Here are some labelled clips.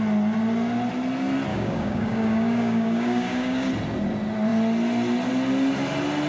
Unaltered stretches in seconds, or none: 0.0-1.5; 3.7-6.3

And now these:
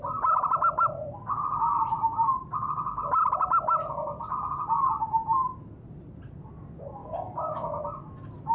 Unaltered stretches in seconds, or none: 0.0-7.0; 7.8-8.5

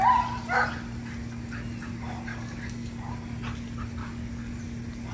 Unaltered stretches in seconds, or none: 0.0-2.3; 3.1-4.0; 4.5-5.1

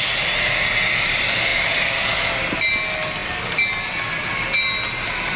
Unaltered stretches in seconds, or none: 0.0-5.4

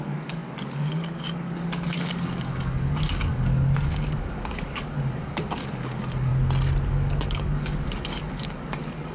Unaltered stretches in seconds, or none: 6.3-6.9

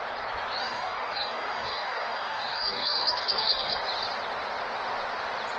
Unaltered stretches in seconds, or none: 0.0-0.6; 3.8-5.6

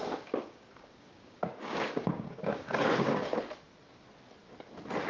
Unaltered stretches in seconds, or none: 3.3-5.1

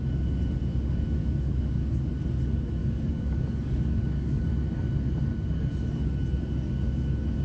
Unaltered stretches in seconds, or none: 0.0-1.2; 2.1-2.8; 4.5-7.4